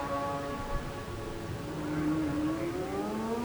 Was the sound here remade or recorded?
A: recorded